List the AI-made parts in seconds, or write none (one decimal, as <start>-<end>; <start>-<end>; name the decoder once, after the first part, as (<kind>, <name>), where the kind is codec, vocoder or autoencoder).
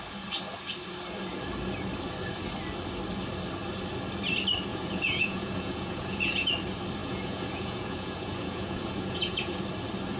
4.7-6.5 (vocoder, Vocos); 7.0-9.6